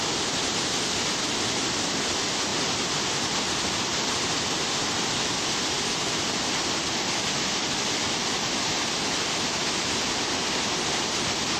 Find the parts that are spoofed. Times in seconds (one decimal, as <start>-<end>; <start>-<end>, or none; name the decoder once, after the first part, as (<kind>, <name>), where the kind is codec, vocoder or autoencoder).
none